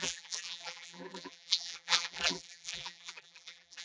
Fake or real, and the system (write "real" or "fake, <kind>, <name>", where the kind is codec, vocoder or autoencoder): fake, vocoder, BigVGAN v2